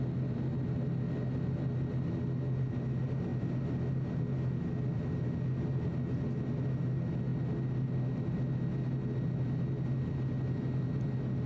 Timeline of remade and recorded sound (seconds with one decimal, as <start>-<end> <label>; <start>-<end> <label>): 0.0-11.5 recorded